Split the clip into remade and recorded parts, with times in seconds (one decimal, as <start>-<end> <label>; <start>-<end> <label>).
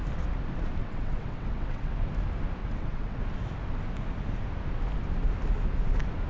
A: 0.0-0.8 recorded; 0.8-1.9 remade; 1.9-2.6 recorded; 2.6-3.2 remade; 3.2-6.3 recorded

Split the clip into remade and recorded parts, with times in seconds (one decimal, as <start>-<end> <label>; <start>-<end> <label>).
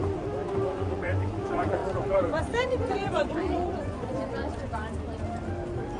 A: 0.0-0.7 recorded; 0.7-4.8 remade; 4.8-6.0 recorded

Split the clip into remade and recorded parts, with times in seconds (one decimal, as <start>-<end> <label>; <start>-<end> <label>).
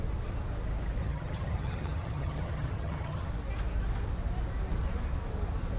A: 0.0-1.0 recorded; 1.0-3.3 remade; 3.3-5.8 recorded